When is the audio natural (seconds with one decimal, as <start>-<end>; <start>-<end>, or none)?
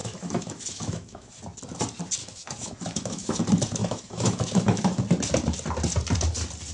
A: 1.3-2.2; 3.4-3.8; 5.0-6.7